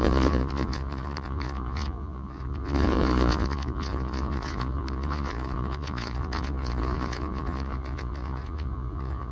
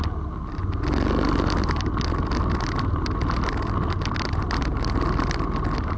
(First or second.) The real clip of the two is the second